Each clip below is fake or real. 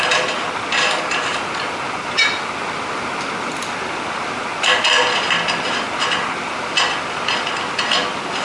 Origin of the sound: real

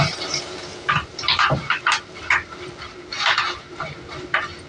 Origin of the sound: fake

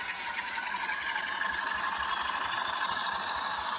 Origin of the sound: fake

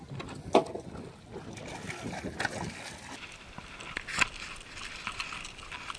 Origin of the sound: real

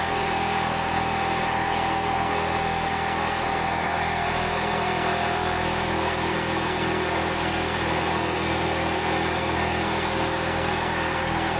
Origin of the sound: fake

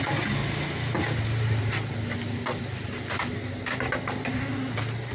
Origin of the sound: real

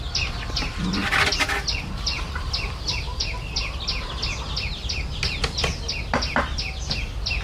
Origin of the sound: real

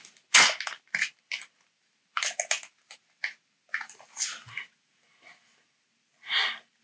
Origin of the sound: real